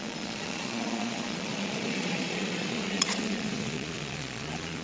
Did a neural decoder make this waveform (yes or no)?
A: yes